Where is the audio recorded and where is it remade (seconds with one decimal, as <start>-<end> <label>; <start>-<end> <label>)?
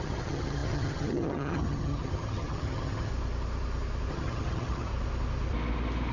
0.0-3.1 remade; 3.1-4.1 recorded; 4.1-4.9 remade; 4.9-6.1 recorded